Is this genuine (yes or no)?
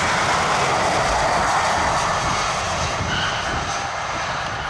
yes